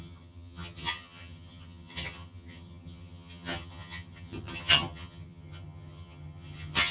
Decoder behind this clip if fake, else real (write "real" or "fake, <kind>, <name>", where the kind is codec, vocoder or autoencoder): fake, vocoder, HiFi-GAN